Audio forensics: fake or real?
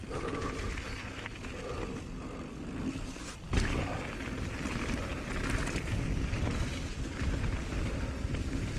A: real